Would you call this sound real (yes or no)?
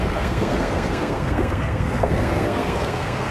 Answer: no